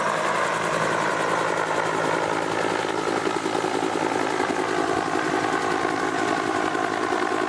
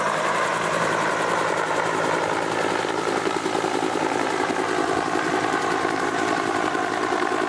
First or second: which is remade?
second